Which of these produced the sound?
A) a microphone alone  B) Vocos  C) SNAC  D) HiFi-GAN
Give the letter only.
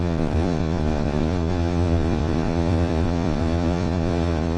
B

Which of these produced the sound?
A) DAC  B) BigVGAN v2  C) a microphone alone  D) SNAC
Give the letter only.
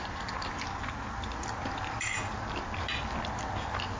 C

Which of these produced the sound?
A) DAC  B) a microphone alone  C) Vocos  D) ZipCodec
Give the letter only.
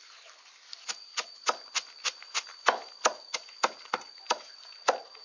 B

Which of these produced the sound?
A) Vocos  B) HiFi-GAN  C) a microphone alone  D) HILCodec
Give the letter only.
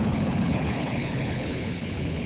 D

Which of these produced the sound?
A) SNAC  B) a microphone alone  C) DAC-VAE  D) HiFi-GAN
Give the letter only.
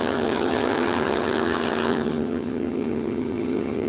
D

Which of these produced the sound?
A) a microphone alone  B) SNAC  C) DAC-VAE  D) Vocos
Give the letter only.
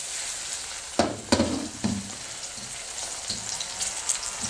A